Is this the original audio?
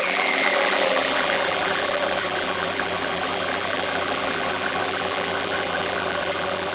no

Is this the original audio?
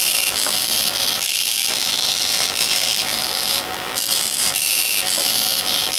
no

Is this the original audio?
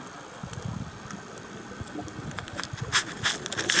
yes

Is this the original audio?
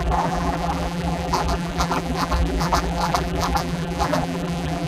no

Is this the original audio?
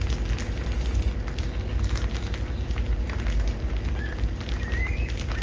yes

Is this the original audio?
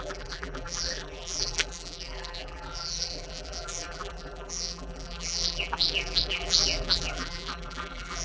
no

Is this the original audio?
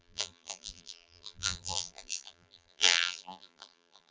no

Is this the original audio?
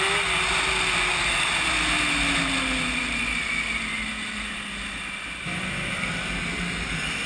yes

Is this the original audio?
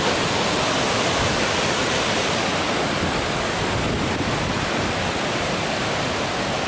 no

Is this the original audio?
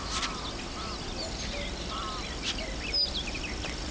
yes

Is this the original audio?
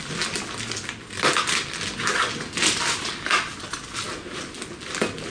yes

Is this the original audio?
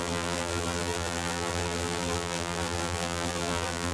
no